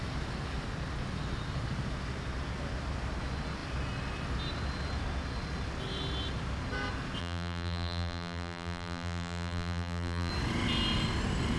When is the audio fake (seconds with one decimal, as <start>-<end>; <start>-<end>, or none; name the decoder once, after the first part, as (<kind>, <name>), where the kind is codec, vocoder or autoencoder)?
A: 7.2-10.3 (vocoder, BigVGAN v2)